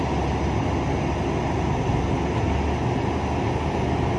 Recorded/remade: recorded